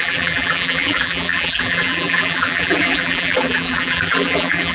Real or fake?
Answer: fake